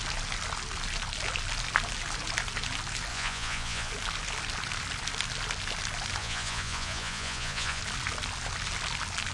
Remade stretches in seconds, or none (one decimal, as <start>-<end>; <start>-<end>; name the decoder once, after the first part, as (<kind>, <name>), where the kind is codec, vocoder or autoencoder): 3.1-3.9 (vocoder, Vocos); 6.2-7.8